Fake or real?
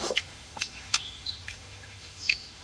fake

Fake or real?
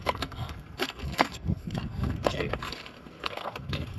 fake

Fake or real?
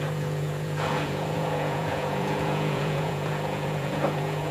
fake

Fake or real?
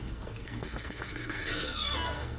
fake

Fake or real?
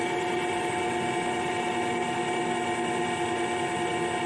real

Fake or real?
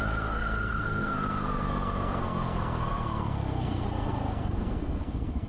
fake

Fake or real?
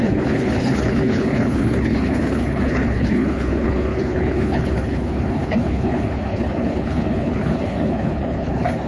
fake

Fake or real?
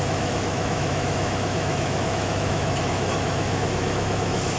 fake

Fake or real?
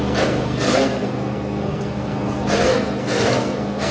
fake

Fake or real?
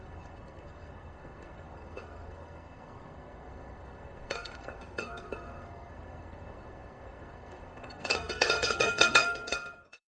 fake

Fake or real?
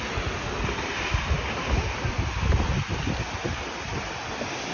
real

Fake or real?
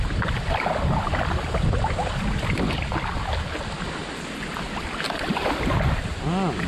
real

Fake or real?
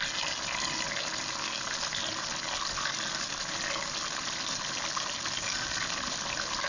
real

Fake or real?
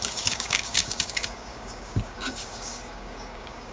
fake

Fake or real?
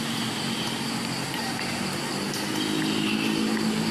real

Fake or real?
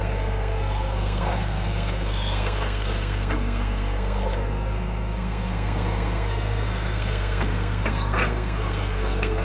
fake